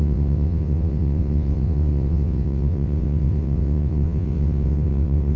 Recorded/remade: remade